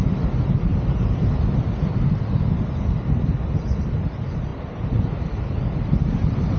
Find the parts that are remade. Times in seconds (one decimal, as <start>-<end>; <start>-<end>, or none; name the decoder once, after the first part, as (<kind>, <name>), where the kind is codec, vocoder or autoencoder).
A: none